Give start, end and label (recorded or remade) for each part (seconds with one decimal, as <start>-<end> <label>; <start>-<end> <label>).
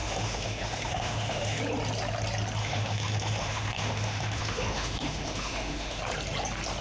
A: 0.0-1.6 remade; 1.6-2.6 recorded; 2.6-6.0 remade; 6.0-6.8 recorded